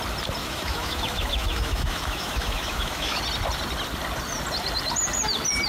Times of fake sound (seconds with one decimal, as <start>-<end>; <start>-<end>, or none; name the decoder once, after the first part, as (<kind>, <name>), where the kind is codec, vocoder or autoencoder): 0.4-3.2 (autoencoder, DAC-VAE)